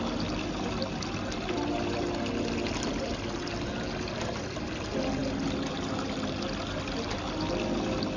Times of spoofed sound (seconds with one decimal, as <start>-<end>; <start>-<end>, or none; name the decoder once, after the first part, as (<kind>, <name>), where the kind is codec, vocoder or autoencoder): none